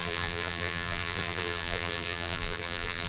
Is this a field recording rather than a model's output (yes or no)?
no